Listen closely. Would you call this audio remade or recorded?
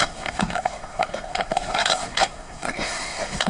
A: remade